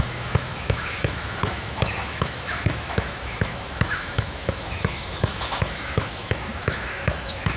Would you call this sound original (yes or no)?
no